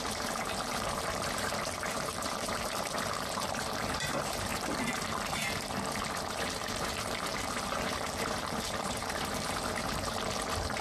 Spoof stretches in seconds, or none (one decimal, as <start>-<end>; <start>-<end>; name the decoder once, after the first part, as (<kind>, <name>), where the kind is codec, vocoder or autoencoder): 0.0-4.5 (vocoder, BigVGAN v2); 6.3-10.8